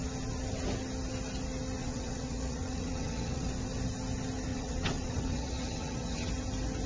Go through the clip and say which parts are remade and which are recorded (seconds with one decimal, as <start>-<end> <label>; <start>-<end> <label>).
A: 0.0-1.8 recorded; 1.8-3.5 remade; 3.5-4.5 recorded; 4.5-6.3 remade; 6.3-6.9 recorded